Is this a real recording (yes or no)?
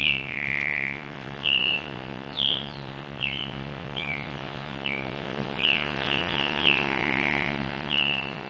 no